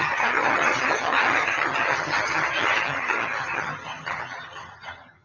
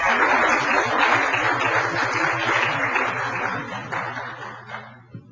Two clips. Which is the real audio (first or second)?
second